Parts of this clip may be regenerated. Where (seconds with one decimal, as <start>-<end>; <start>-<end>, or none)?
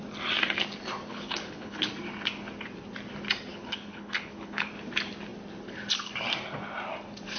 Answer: 1.1-1.9; 3.5-4.7